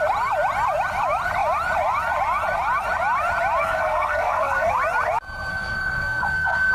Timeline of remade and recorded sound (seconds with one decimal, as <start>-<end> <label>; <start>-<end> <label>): 0.0-3.6 recorded; 3.6-4.7 remade; 4.7-5.5 recorded; 5.5-6.7 remade